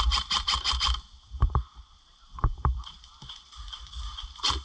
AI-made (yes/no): yes